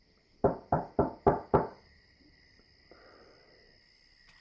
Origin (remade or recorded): recorded